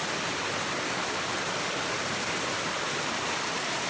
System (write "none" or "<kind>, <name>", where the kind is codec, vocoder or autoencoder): none